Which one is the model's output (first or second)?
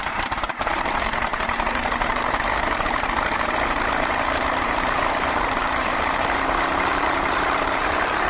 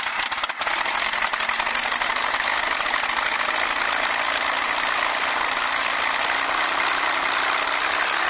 first